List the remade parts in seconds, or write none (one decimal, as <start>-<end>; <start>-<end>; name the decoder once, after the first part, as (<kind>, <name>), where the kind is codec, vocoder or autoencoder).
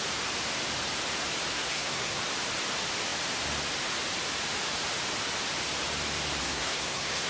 1.5-2.2 (codec, SNAC); 6.4-7.3